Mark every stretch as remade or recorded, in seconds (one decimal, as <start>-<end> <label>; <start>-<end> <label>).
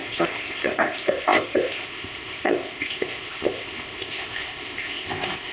0.0-5.5 remade